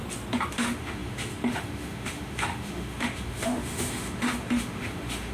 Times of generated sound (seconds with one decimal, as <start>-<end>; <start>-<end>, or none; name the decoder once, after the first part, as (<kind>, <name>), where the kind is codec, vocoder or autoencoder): 0.5-5.3 (autoencoder, DAC-VAE)

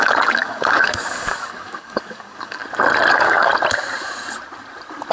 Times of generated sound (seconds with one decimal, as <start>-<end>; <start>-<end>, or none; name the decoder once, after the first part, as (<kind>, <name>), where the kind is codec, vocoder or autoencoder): 0.0-2.6 (codec, DAC); 3.1-3.5

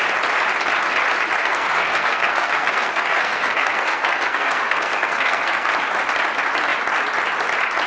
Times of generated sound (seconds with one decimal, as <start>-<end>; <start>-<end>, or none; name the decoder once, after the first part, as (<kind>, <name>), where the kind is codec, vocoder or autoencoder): 1.4-5.7 (codec, SNAC)